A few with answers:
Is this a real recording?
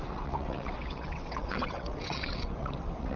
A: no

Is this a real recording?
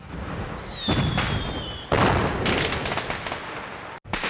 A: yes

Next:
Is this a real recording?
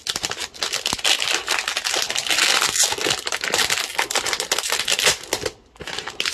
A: yes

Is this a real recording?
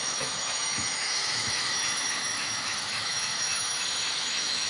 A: no